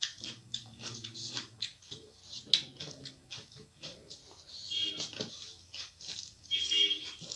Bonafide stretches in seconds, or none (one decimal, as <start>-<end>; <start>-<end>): 2.2-2.8; 4.2-5.3